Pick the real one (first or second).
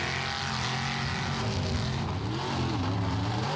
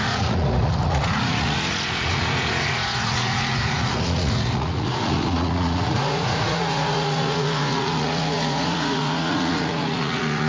first